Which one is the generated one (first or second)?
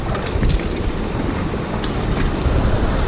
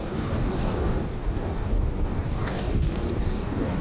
second